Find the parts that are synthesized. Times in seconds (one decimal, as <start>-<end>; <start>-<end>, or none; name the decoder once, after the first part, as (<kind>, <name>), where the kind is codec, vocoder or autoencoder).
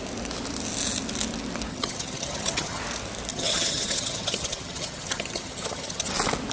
1.7-2.8 (vocoder, HiFi-GAN); 3.3-6.1